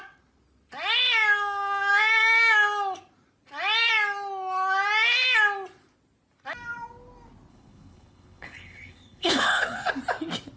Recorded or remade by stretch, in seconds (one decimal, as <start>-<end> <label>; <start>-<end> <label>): 0.0-7.5 recorded; 7.5-9.9 remade; 9.9-10.6 recorded